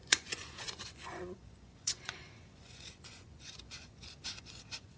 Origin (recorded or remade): remade